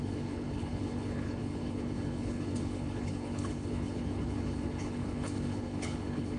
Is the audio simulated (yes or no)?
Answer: yes